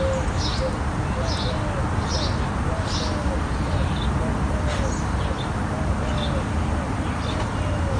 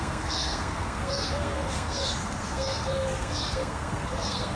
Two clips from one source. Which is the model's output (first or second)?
second